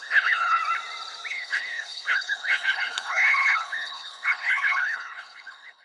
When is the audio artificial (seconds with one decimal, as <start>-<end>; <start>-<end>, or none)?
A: 0.0-0.6; 1.3-5.8